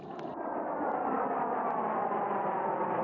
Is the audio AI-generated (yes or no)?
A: no